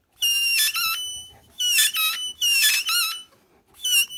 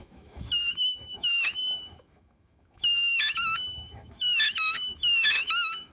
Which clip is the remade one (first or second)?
second